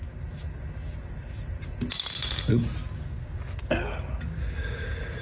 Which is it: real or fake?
real